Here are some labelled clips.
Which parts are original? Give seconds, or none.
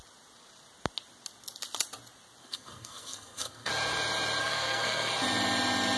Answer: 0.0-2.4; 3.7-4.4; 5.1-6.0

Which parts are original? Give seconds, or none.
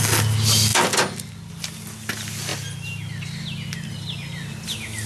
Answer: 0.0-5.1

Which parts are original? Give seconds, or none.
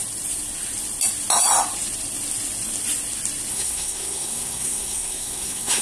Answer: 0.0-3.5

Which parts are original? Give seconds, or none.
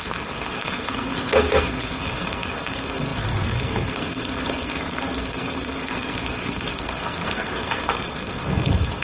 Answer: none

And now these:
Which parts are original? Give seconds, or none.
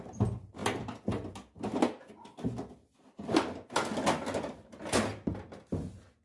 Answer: 0.0-6.2